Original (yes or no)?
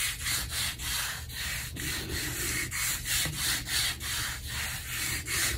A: yes